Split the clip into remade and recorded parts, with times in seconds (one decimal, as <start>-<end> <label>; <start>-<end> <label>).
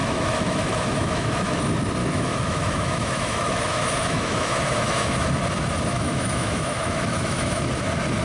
0.0-1.6 remade; 1.6-2.0 recorded; 2.0-5.3 remade; 5.3-5.9 recorded; 5.9-7.7 remade; 7.7-8.2 recorded